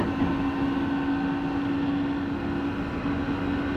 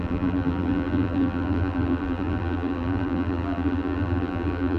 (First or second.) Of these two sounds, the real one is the first